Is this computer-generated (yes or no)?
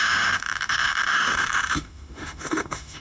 yes